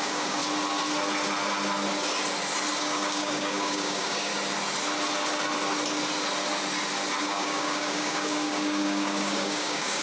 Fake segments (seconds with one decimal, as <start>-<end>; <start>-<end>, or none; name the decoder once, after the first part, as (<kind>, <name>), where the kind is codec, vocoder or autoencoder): 0.0-0.4 (codec, DAC); 2.8-4.3; 7.2-10.0

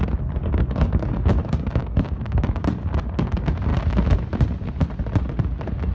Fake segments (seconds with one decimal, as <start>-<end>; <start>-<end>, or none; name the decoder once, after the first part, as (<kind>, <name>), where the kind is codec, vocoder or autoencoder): 0.4-2.7 (codec, DAC)

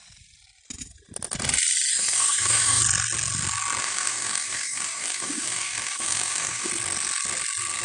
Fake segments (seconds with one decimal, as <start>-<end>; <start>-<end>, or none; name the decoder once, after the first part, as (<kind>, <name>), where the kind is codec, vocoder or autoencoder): 1.9-2.8 (codec, DAC); 3.8-6.7

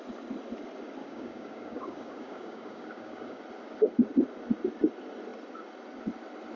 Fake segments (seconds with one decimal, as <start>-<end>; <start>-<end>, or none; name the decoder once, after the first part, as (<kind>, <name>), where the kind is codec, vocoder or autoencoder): 1.0-3.4 (codec, DAC)

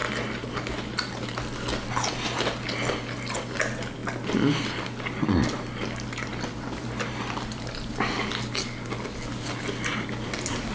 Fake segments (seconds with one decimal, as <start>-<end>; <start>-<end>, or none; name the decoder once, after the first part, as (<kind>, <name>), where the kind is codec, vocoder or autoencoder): none